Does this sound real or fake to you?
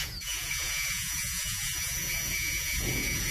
fake